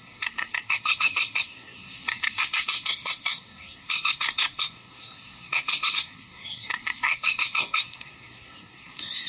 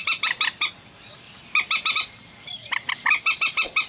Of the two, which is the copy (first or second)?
first